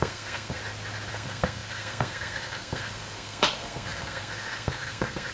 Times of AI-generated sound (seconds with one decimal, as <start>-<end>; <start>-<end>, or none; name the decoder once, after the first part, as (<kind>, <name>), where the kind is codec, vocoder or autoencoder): 0.0-0.6 (codec, SNAC); 1.1-5.3